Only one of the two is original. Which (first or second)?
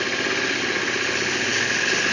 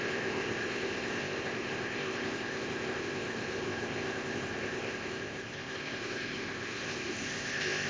first